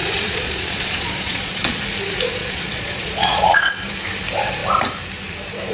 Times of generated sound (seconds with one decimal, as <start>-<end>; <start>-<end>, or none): 0.0-1.8; 2.4-3.7